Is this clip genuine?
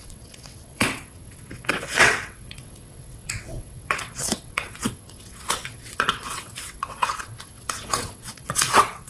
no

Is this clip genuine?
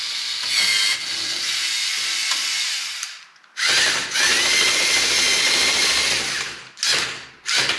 yes